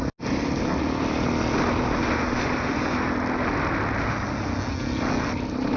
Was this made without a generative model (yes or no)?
yes